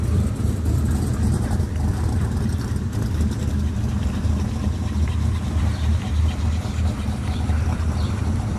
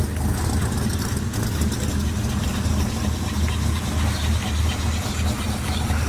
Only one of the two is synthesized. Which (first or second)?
first